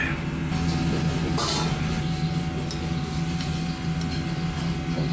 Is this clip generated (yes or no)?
no